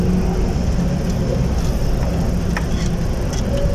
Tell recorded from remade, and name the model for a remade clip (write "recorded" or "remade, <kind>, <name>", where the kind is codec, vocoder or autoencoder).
recorded